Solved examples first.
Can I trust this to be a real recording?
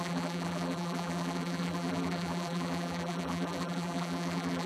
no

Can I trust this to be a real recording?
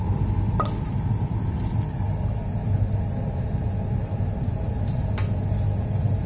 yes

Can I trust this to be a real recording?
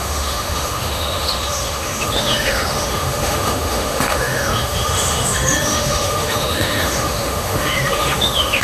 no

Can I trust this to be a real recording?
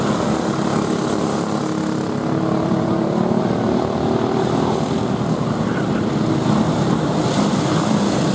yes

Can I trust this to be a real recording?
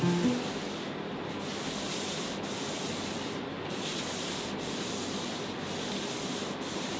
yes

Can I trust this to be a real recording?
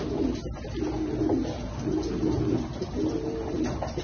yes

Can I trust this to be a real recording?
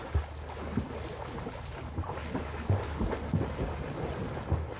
yes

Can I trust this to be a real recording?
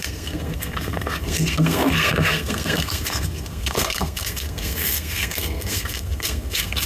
no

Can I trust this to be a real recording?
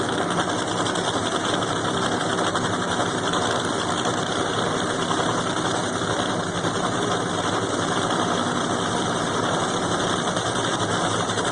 yes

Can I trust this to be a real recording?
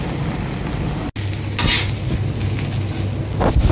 yes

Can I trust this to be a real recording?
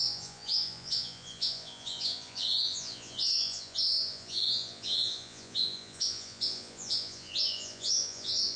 no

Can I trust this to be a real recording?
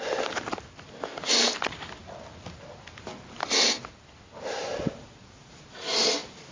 yes